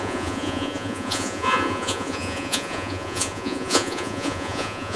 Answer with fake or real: fake